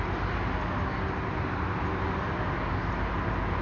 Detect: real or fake real